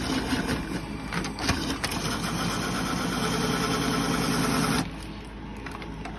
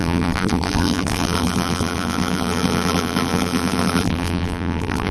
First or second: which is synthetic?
second